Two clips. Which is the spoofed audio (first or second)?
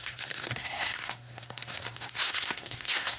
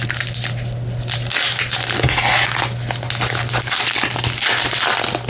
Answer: first